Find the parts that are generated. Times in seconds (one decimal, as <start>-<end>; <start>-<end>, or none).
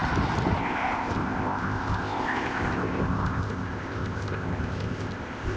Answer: 0.6-5.6